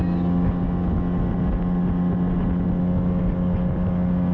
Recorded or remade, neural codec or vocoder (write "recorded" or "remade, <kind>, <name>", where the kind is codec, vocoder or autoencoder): recorded